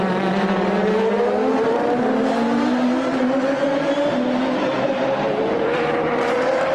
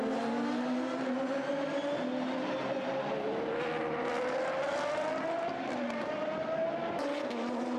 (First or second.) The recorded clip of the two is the second